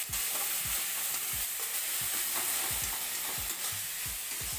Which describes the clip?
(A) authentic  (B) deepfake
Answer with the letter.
A